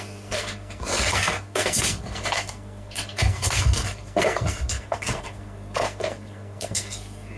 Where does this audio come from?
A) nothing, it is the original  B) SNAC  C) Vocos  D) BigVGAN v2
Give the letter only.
B